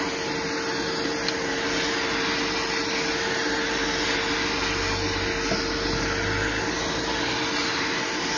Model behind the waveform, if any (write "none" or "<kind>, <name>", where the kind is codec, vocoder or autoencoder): none